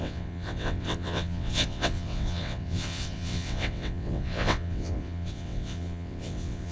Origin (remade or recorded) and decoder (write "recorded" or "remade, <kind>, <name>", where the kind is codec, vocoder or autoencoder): remade, vocoder, WaveNeXt